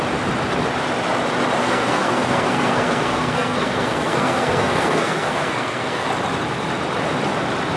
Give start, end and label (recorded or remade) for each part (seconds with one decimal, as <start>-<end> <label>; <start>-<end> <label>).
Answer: 0.0-1.6 recorded; 1.6-6.1 remade; 6.1-7.8 recorded